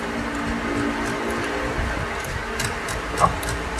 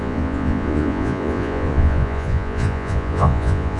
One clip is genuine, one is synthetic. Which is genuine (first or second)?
first